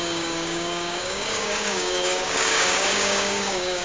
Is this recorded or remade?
remade